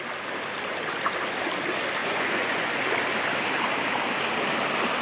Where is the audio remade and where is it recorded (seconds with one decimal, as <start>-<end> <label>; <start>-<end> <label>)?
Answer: 0.0-2.0 recorded; 2.0-2.7 remade; 2.7-5.0 recorded